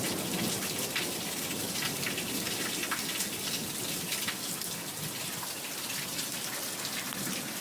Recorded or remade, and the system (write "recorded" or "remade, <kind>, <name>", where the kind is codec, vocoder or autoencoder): recorded